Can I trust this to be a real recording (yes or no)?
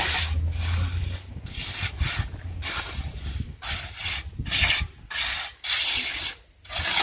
yes